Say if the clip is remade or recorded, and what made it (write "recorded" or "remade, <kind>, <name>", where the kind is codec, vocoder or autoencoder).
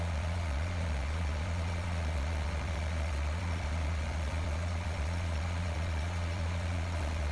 remade, vocoder, Vocos